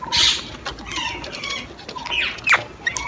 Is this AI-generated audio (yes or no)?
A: no